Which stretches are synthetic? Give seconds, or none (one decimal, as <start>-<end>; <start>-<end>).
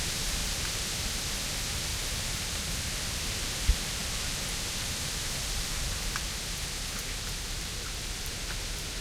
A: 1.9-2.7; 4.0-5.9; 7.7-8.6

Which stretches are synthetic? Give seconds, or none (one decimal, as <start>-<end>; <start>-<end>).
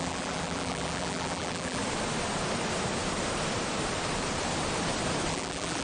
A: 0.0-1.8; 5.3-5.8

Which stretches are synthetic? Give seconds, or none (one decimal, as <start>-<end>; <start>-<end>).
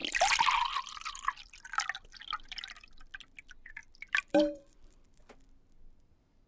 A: 0.0-2.7; 3.8-5.2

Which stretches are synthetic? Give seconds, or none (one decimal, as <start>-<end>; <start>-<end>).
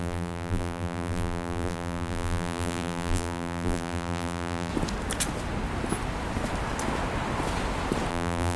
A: 0.0-4.7; 8.1-8.6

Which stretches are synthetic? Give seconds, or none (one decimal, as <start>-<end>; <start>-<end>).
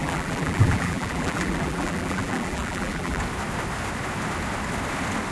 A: 0.0-3.2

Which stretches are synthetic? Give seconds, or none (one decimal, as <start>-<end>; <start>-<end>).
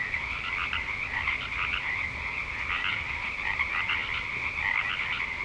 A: 0.0-4.0; 4.8-5.4